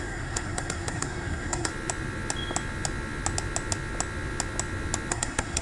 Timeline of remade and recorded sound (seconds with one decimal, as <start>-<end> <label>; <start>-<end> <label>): 0.0-1.7 remade; 1.7-5.1 recorded; 5.1-5.6 remade